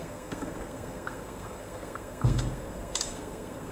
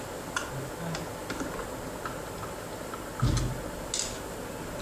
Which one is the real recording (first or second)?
second